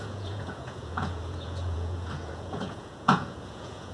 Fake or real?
fake